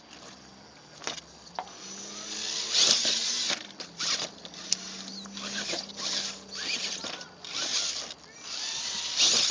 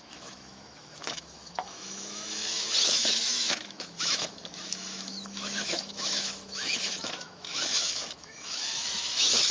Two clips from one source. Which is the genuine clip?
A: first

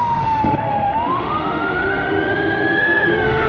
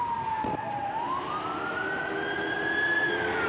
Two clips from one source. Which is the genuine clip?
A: second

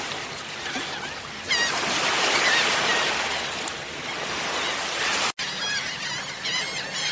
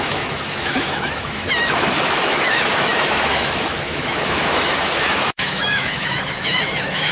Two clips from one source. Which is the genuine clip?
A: first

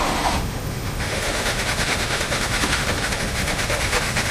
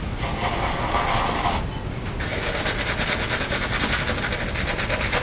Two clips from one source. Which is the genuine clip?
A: second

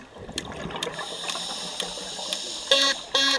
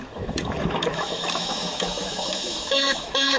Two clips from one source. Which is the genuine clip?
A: first